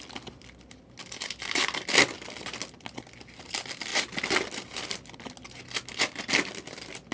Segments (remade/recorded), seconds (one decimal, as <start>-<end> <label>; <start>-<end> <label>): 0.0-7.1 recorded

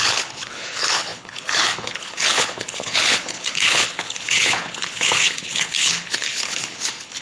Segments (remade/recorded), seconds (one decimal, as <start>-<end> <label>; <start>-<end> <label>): 0.0-7.2 remade

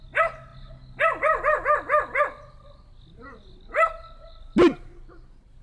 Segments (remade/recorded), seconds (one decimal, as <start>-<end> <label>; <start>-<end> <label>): 0.0-5.6 recorded

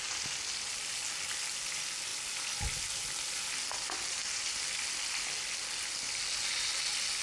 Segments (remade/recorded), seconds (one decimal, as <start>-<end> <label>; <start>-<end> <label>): 0.0-7.2 recorded

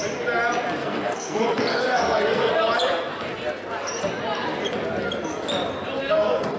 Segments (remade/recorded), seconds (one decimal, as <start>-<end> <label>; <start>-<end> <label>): 0.0-0.8 recorded; 0.8-2.5 remade; 2.5-6.0 recorded; 6.0-6.6 remade

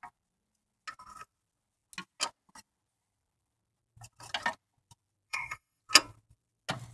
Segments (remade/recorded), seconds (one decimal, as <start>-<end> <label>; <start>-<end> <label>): 0.0-5.3 recorded; 5.3-5.8 remade; 5.8-6.9 recorded

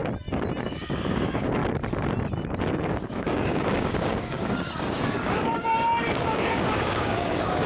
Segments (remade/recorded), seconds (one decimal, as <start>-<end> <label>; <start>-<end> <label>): 0.0-0.6 recorded; 0.6-1.6 remade; 1.6-2.9 recorded; 2.9-7.7 remade